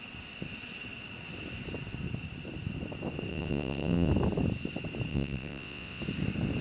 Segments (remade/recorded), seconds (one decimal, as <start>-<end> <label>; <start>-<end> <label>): 0.0-3.3 recorded; 3.3-4.1 remade; 4.1-5.1 recorded; 5.1-6.0 remade; 6.0-6.6 recorded